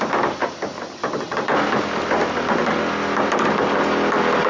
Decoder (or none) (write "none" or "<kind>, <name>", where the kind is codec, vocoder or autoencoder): none